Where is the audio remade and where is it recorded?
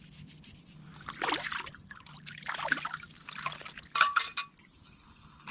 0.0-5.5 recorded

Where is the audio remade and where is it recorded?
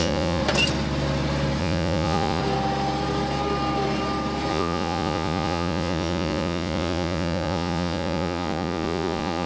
0.0-0.4 remade; 0.4-1.6 recorded; 1.6-2.4 remade; 2.4-4.5 recorded; 4.5-9.5 remade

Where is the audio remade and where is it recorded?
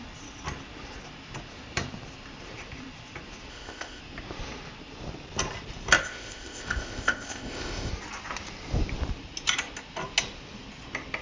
0.0-3.5 recorded; 3.5-4.0 remade; 4.0-6.0 recorded; 6.0-7.9 remade; 7.9-11.2 recorded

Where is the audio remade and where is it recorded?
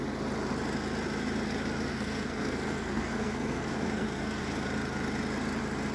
0.0-1.9 recorded; 1.9-4.4 remade; 4.4-5.9 recorded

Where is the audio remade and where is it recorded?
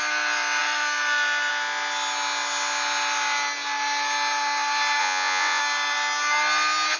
0.0-5.0 recorded; 5.0-5.6 remade; 5.6-7.0 recorded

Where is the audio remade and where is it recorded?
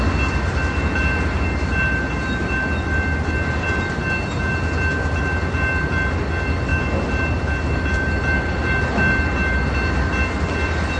0.0-11.0 recorded